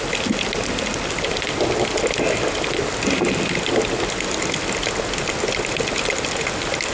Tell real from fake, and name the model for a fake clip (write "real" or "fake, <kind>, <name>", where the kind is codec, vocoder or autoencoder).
real